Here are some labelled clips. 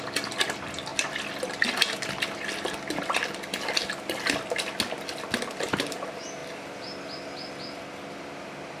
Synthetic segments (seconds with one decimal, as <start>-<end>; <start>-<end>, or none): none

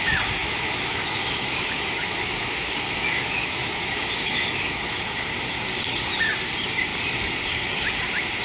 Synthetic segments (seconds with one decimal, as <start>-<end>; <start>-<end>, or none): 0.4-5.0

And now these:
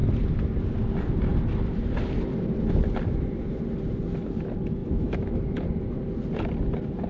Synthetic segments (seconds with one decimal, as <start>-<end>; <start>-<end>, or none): 4.8-5.4

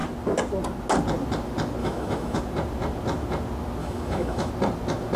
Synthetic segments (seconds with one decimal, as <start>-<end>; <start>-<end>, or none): 1.8-2.4; 3.8-4.5